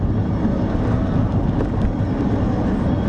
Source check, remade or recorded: recorded